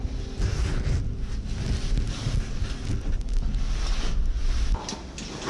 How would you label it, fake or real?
real